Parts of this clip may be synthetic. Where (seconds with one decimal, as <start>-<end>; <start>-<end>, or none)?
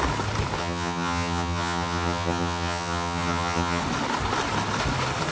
0.6-3.8